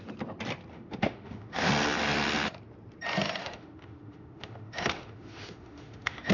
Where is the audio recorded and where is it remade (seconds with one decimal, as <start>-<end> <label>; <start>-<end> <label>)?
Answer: 0.0-0.7 recorded; 0.7-1.7 remade; 1.7-3.4 recorded; 3.4-6.3 remade